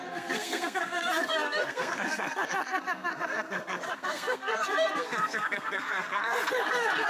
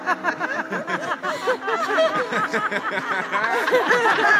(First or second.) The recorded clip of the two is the second